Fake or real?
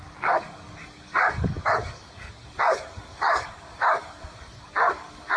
fake